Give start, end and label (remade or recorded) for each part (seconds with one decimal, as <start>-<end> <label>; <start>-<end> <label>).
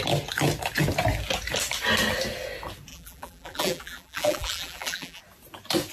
0.0-2.9 recorded; 2.9-5.2 remade; 5.2-5.9 recorded